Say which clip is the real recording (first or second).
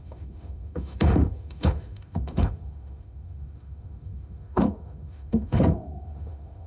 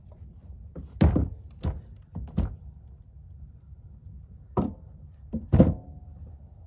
second